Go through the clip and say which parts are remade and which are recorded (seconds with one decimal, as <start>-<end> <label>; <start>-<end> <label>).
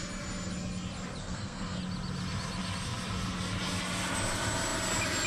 0.0-1.2 recorded; 1.2-1.8 remade; 1.8-5.3 recorded